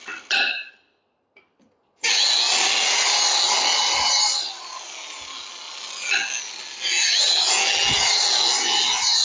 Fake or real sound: real